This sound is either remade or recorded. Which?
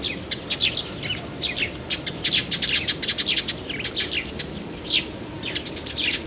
recorded